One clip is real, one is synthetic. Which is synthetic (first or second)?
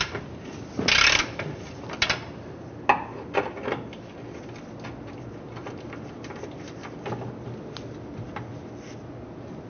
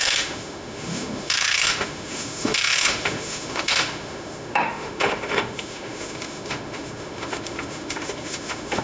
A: second